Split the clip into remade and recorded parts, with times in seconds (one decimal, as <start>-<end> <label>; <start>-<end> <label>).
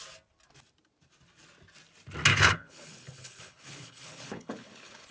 0.0-2.3 recorded; 2.3-5.1 remade